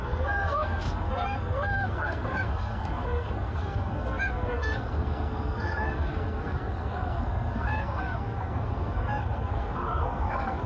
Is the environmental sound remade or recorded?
remade